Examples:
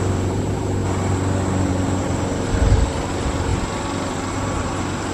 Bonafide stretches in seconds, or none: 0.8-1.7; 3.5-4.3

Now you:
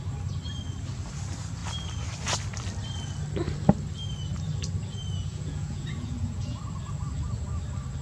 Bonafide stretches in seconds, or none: 0.0-5.2; 6.6-8.0

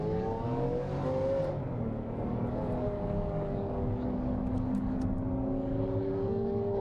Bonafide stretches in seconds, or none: 0.9-1.5

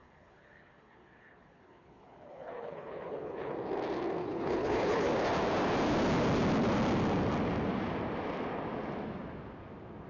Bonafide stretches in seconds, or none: 3.5-4.2; 5.1-10.1